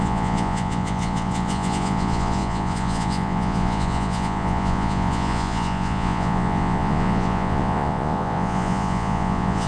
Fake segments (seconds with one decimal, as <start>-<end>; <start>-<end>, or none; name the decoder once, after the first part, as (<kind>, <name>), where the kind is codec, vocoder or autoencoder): 0.0-9.7 (vocoder, Vocos)